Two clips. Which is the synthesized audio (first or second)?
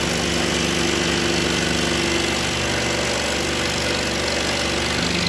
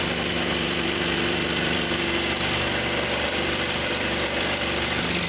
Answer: second